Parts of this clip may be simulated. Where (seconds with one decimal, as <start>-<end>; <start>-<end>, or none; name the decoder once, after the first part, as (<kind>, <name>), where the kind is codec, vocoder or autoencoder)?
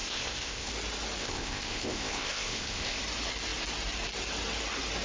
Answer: 0.0-0.7 (codec, ZipCodec); 1.2-3.0